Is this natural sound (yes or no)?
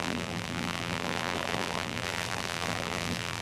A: no